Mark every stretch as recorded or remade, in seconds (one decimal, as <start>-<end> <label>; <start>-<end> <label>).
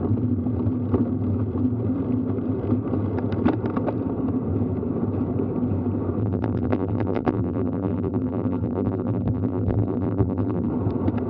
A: 0.0-6.2 recorded; 6.2-10.7 remade; 10.7-11.3 recorded